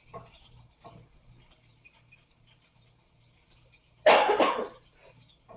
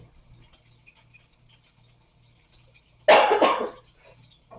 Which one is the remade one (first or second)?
first